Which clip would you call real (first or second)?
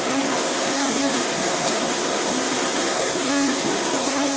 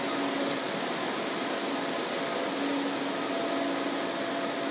second